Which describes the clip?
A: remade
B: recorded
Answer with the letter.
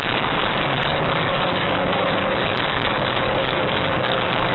A